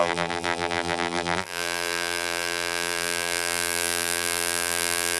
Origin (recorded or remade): remade